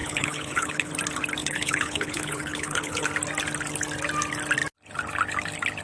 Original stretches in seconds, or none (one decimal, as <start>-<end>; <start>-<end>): 0.9-1.4; 3.1-5.8